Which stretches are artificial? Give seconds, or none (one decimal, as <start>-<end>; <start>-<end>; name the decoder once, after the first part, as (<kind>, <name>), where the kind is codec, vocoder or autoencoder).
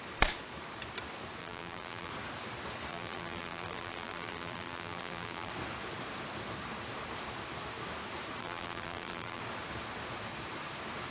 1.4-2.1 (vocoder, BigVGAN v2); 2.9-5.5; 8.4-9.4